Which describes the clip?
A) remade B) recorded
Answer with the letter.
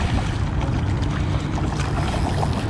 B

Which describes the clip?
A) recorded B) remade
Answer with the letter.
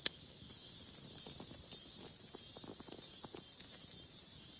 A